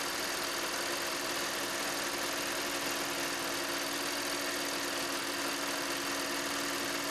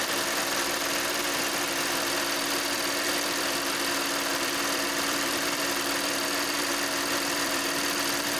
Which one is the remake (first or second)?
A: second